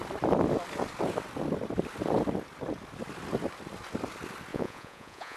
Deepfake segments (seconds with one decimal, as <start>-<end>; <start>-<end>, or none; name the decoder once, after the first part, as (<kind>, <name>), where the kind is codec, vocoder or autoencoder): 4.5-5.4 (vocoder, Vocos)